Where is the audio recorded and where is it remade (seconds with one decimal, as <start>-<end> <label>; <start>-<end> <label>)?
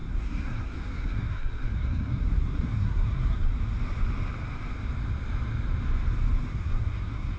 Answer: 0.0-3.5 remade; 3.5-6.5 recorded; 6.5-7.4 remade